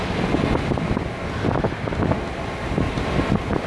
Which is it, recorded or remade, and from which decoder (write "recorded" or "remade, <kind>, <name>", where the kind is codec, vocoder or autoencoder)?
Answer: recorded